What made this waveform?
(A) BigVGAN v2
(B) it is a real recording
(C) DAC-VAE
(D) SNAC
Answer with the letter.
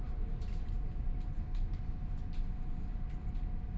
A